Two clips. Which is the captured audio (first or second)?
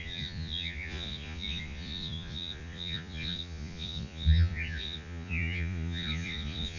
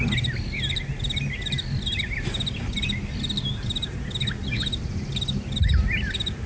second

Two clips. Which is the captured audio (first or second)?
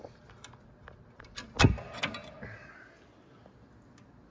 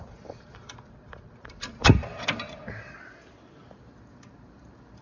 first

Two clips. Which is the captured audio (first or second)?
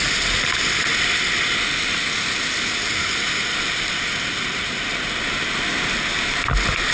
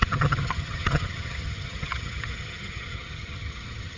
first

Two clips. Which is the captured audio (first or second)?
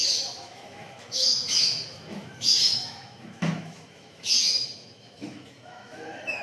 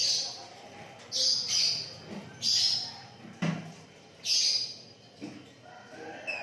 second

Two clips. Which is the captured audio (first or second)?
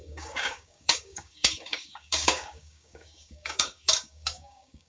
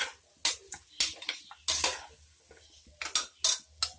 second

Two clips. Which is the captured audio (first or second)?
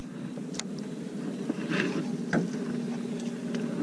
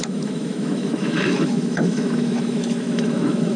first